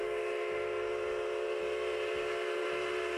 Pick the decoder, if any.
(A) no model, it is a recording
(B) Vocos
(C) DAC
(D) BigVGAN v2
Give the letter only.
A